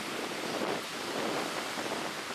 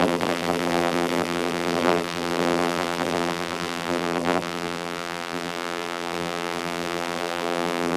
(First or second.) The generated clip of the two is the second